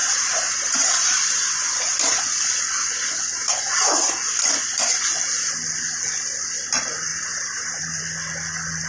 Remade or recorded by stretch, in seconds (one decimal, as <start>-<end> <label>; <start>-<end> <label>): 0.0-2.2 remade; 2.2-7.1 recorded; 7.1-8.0 remade; 8.0-8.9 recorded